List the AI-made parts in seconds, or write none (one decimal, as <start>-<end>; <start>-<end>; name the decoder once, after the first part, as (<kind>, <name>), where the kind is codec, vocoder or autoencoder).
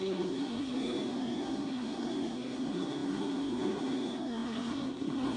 0.0-5.4 (codec, SNAC)